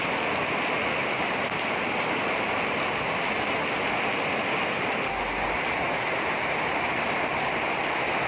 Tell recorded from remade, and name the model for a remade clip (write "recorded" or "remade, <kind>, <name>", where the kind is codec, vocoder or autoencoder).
recorded